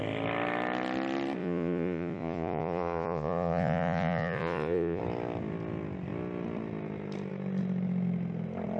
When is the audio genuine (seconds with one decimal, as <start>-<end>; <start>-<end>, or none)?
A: 0.0-1.4; 5.0-8.8